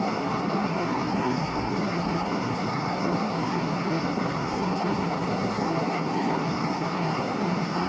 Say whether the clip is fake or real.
fake